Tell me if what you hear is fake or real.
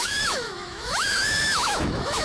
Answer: fake